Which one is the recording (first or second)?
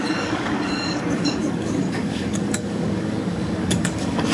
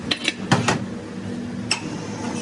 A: second